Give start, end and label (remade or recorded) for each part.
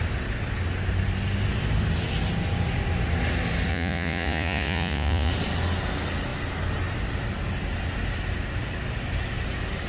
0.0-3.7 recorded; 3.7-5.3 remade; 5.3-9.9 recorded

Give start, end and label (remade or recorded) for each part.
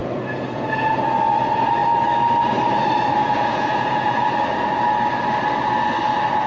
0.0-0.9 remade; 0.9-3.2 recorded; 3.2-4.3 remade; 4.3-6.5 recorded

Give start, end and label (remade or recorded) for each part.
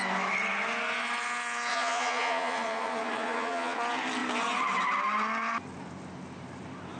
0.0-1.7 recorded; 1.7-3.8 remade; 3.8-7.0 recorded